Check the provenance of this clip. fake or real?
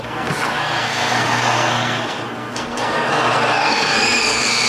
fake